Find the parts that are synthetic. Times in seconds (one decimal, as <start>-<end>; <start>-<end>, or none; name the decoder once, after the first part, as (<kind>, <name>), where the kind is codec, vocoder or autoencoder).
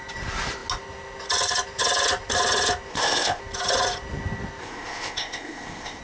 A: 2.9-3.4 (codec, ZipCodec); 4.6-6.0